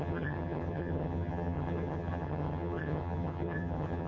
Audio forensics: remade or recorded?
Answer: remade